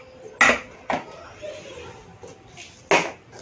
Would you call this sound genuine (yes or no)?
yes